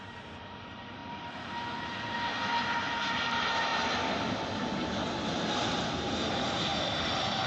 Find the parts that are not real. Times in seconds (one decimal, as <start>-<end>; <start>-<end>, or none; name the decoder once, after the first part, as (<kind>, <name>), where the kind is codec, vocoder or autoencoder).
0.0-1.0 (vocoder, BigVGAN v2); 2.8-3.7; 5.1-7.5